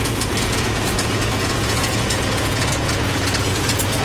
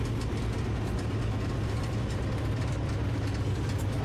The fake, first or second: first